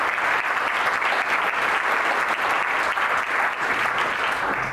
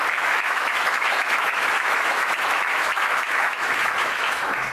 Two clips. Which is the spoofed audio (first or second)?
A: second